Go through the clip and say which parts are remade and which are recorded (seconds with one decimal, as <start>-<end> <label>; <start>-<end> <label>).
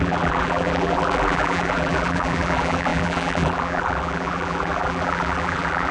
0.0-5.9 remade